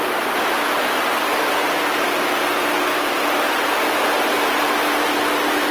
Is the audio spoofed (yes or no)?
no